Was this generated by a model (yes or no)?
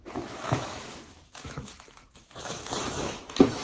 yes